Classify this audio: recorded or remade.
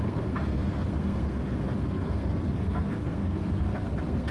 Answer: remade